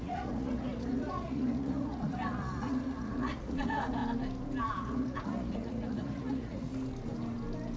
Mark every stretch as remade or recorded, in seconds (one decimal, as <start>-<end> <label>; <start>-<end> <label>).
0.0-4.0 remade; 4.0-4.6 recorded; 4.6-6.7 remade; 6.7-7.8 recorded